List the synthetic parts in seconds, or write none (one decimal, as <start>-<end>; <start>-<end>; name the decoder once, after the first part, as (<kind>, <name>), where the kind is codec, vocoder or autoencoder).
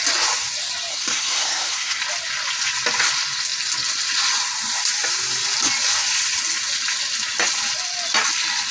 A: 0.9-2.0 (codec, SNAC)